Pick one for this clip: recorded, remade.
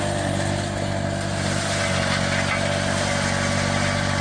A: recorded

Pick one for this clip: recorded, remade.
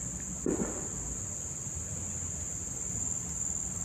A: recorded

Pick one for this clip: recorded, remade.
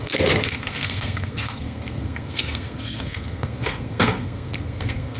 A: remade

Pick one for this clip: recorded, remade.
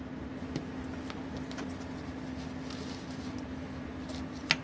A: recorded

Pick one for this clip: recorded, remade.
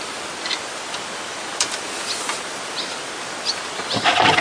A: recorded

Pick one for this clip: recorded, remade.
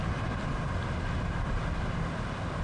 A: recorded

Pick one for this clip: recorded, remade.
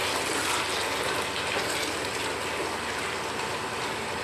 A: recorded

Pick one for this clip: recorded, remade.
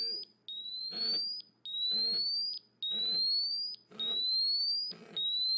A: recorded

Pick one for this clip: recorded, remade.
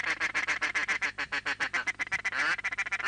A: recorded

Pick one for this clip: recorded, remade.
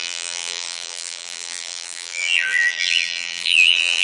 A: remade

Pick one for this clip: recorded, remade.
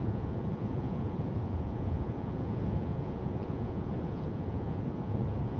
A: remade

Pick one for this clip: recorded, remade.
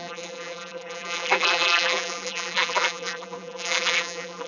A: remade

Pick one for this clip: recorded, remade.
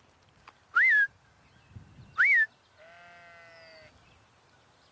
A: recorded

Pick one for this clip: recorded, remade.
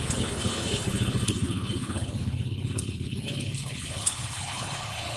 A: remade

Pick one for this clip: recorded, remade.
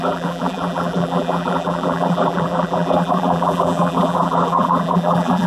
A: remade